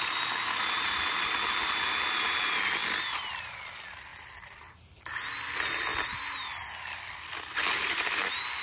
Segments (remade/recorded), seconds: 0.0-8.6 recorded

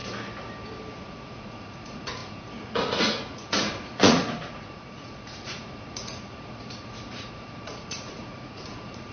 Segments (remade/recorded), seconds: 0.0-1.0 recorded; 1.0-9.1 remade

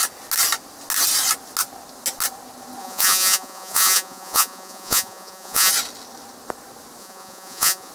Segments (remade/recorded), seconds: 0.0-2.8 recorded; 2.8-5.7 remade; 5.7-7.0 recorded; 7.0-7.9 remade

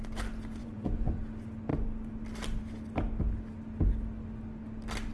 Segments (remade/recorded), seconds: 0.0-0.6 recorded; 0.6-1.2 remade; 1.2-5.1 recorded

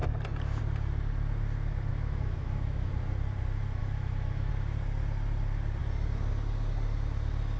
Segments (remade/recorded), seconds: 0.0-1.9 recorded; 1.9-2.9 remade; 2.9-3.8 recorded; 3.8-4.5 remade; 4.5-7.6 recorded

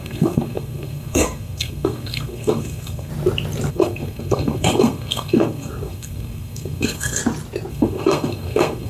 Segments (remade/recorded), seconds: 0.0-3.1 remade; 3.1-3.7 recorded; 3.7-7.2 remade; 7.2-7.7 recorded; 7.7-8.9 remade